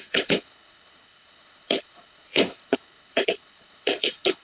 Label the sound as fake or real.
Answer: fake